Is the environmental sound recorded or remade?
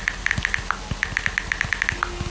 recorded